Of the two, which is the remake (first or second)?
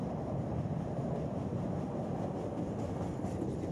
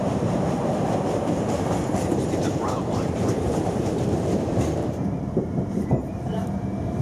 second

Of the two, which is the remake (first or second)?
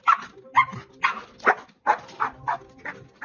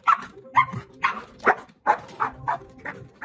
second